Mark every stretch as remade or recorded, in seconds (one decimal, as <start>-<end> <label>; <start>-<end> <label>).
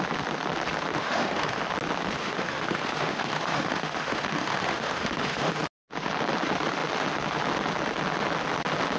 0.0-0.9 recorded; 0.9-1.6 remade; 1.6-2.2 recorded; 2.2-5.6 remade; 5.6-9.0 recorded